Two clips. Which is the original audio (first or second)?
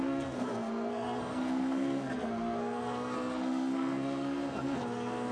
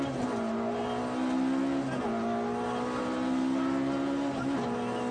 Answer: second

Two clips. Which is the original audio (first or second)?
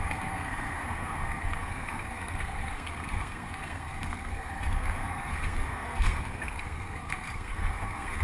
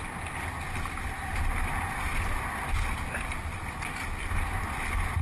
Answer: second